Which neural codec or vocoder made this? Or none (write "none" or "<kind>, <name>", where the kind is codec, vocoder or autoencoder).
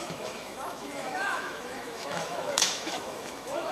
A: autoencoder, DAC-VAE